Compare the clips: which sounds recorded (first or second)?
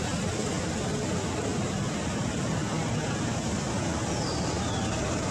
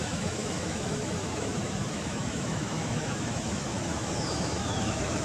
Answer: first